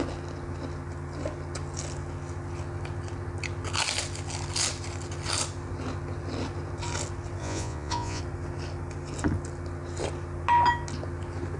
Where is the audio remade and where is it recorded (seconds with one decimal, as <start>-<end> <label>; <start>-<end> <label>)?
0.0-7.4 recorded; 7.4-8.2 remade; 8.2-11.6 recorded